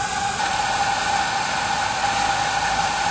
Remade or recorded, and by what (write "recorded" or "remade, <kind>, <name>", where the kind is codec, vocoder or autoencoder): recorded